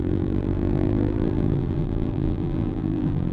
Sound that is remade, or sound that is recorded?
remade